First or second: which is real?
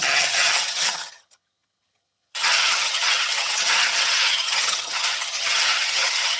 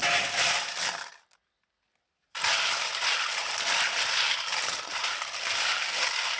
second